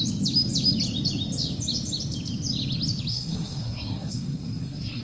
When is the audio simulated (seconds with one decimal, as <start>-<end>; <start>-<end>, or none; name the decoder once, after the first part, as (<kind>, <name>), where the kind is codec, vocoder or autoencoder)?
3.1-5.0 (codec, SNAC)